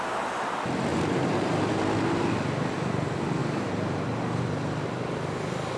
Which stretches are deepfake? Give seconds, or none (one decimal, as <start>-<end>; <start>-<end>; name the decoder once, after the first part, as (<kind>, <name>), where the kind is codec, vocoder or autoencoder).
0.9-1.7 (vocoder, BigVGAN v2); 3.4-4.4